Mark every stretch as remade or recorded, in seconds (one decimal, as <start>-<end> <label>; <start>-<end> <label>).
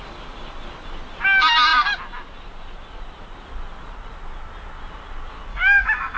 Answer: 0.0-5.5 recorded; 5.5-6.2 remade